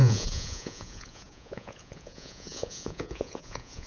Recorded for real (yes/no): no